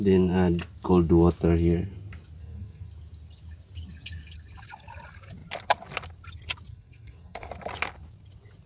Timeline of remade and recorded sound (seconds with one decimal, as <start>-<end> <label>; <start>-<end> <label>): 0.0-2.4 recorded; 2.4-2.9 remade; 2.9-6.7 recorded; 6.7-7.5 remade; 7.5-8.7 recorded